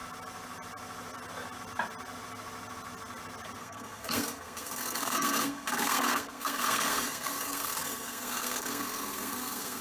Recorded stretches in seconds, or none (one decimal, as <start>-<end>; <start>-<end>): 0.0-3.6

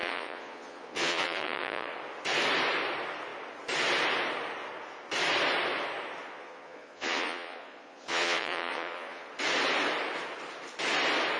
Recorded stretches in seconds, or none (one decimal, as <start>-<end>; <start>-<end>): 2.0-6.2; 9.3-11.4

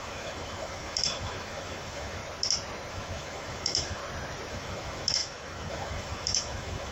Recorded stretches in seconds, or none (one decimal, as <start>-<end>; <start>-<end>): 2.2-2.9; 4.0-4.5

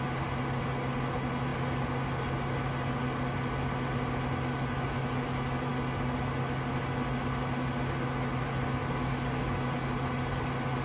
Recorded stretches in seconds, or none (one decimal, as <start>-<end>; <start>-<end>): 0.0-10.8